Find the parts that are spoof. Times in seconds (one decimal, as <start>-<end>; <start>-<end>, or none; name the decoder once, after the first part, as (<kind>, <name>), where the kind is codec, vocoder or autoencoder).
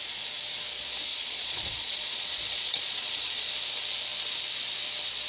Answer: 1.1-3.5 (vocoder, Vocos)